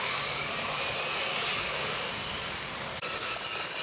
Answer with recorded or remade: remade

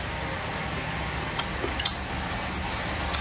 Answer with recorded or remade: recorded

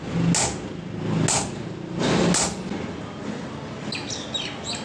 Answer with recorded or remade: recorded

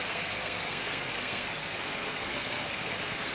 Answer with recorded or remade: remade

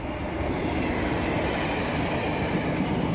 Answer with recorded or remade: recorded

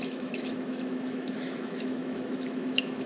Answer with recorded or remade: remade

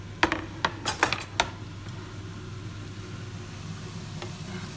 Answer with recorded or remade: recorded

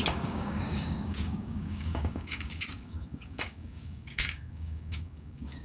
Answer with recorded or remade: remade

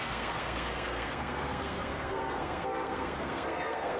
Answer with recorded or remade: remade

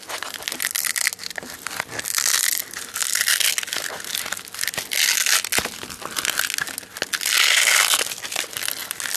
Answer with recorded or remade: recorded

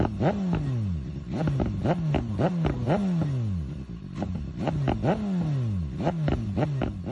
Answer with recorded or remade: recorded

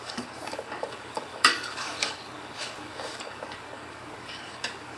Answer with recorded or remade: remade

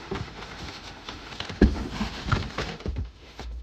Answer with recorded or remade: remade